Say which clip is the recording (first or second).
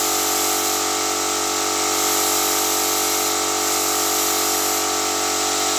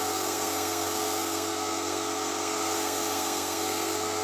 first